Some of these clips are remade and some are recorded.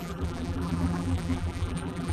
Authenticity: remade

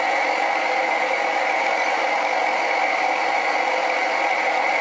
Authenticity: recorded